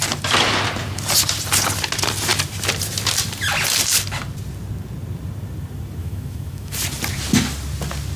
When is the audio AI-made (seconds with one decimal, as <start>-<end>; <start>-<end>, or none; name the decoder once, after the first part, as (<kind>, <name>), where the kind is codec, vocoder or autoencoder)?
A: 6.0-6.7 (autoencoder, DAC-VAE)